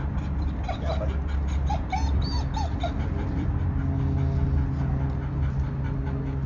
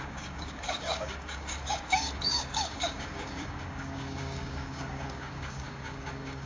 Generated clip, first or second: second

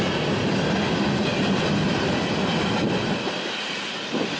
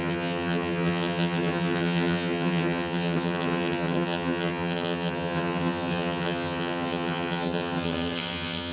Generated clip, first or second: second